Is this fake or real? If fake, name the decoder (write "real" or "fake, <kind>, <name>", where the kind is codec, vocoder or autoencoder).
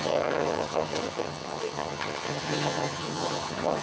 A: fake, vocoder, HiFi-GAN